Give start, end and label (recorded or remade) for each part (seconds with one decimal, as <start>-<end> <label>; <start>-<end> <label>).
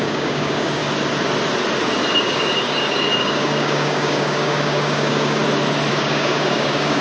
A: 0.0-0.8 remade; 0.8-2.1 recorded; 2.1-5.4 remade; 5.4-5.9 recorded; 5.9-7.0 remade